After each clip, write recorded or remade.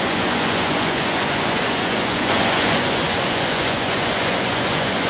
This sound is remade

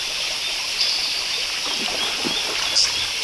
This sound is recorded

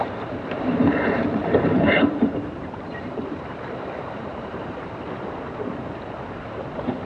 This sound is remade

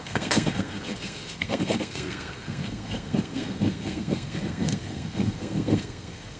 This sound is remade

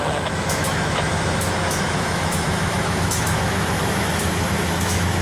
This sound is remade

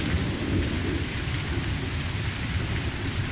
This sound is recorded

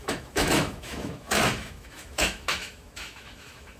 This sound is remade